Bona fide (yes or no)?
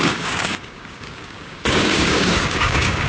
no